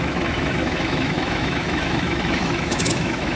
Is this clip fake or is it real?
fake